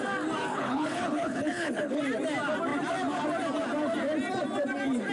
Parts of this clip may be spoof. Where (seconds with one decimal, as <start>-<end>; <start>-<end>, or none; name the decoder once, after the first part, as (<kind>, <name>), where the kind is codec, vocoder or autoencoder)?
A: 0.5-2.0 (codec, HILCodec)